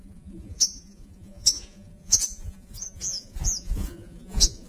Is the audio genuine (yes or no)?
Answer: no